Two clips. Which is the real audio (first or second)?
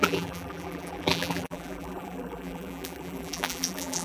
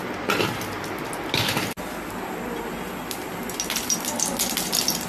second